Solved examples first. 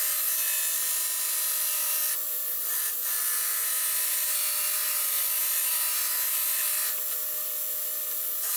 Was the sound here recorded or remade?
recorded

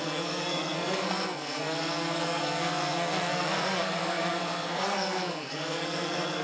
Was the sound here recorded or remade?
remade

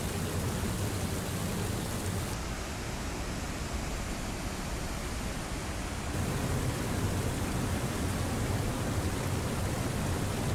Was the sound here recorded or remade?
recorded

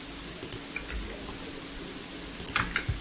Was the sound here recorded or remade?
recorded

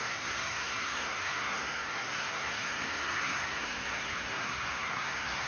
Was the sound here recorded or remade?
remade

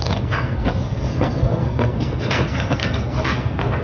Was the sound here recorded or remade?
remade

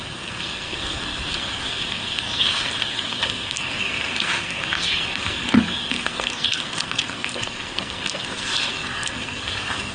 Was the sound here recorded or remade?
remade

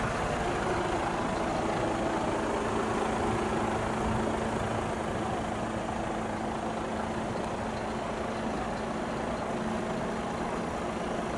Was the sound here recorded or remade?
recorded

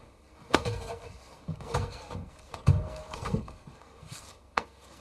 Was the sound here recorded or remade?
remade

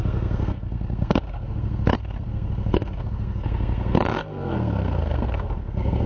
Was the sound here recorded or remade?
remade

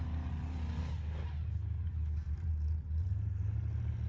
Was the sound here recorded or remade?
recorded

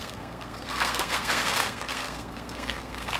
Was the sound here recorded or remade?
remade